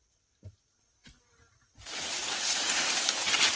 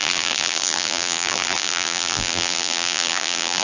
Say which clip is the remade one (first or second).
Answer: second